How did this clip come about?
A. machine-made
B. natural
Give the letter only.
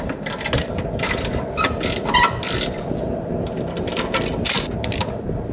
B